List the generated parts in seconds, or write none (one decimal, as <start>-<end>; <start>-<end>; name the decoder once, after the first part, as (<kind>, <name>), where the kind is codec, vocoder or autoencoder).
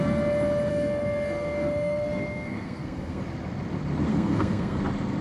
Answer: 0.7-3.2 (codec, SNAC); 4.1-4.8